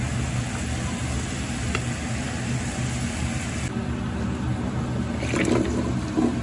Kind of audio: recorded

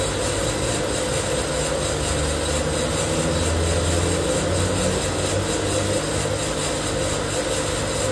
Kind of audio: recorded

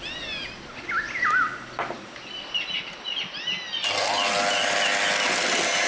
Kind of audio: recorded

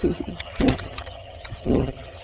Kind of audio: remade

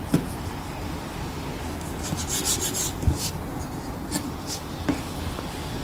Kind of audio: recorded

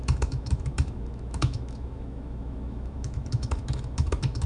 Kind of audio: remade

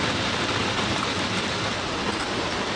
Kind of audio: recorded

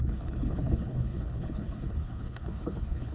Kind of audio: remade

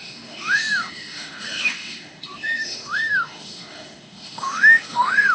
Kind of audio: remade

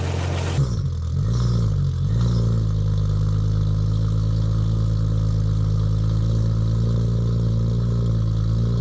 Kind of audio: recorded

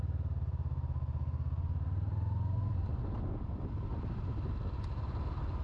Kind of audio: recorded